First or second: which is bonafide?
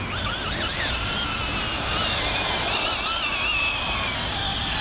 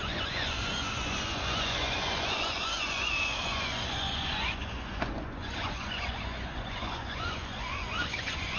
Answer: first